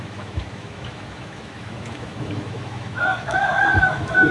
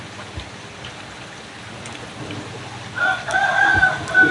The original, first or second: second